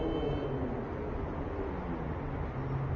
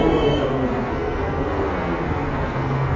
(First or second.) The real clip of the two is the first